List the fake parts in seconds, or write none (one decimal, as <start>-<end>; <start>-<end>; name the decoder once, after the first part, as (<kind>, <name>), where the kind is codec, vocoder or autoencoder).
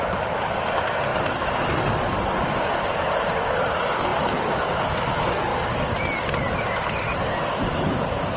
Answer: none